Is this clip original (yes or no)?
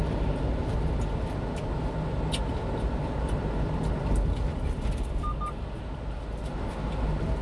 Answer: yes